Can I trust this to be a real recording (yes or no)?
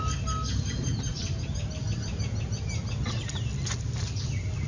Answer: yes